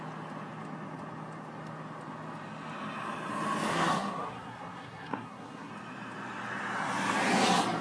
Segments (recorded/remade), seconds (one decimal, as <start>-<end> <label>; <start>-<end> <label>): 0.0-3.7 recorded; 3.7-5.7 remade; 5.7-7.8 recorded